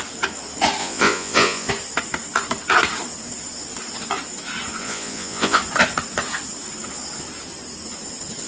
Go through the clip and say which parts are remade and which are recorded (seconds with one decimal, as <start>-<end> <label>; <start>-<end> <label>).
0.0-0.8 recorded; 0.8-1.7 remade; 1.7-4.8 recorded; 4.8-5.6 remade; 5.6-8.5 recorded